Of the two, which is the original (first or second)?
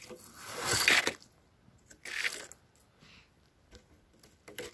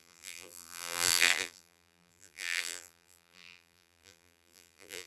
first